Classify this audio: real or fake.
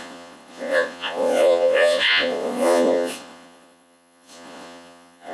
fake